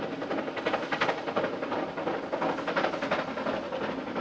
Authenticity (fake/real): real